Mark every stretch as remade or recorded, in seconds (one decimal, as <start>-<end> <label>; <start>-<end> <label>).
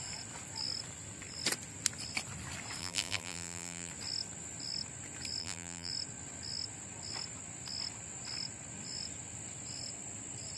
0.0-2.8 recorded; 2.8-3.9 remade; 3.9-5.4 recorded; 5.4-5.9 remade; 5.9-10.6 recorded